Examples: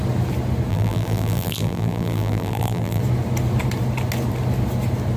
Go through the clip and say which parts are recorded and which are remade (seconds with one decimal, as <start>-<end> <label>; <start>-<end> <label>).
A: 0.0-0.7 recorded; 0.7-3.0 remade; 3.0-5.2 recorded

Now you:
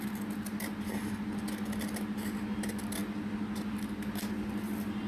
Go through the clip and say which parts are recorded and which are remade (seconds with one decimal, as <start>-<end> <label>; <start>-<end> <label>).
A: 0.0-5.1 recorded

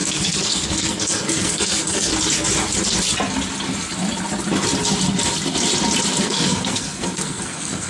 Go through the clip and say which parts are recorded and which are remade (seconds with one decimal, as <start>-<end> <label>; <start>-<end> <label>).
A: 0.0-2.1 remade; 2.1-6.2 recorded; 6.2-7.9 remade